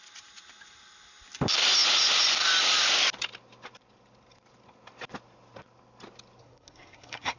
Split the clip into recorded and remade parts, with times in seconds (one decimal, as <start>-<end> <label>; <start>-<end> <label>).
0.0-6.4 recorded; 6.4-7.4 remade